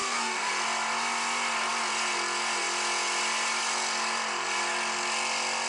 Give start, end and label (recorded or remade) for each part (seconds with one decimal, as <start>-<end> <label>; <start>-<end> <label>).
0.0-0.5 remade; 0.5-5.7 recorded